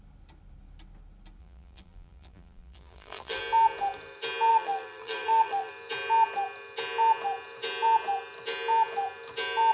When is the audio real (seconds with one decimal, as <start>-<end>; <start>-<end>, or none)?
0.0-1.4; 3.4-4.5; 5.7-9.7